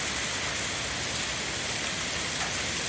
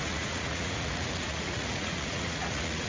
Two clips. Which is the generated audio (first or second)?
second